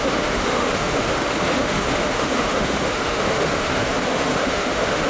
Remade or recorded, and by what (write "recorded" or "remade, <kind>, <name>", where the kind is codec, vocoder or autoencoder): remade, autoencoder, DAC-VAE